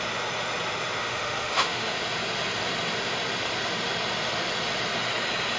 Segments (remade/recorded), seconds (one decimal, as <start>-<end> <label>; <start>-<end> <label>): 0.0-1.0 recorded; 1.0-1.9 remade; 1.9-5.6 recorded